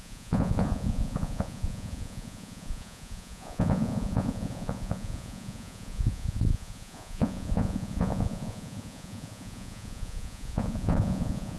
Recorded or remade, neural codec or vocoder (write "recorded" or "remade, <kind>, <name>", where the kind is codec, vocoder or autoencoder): remade, vocoder, Vocos